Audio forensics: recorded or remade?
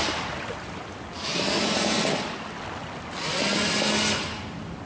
recorded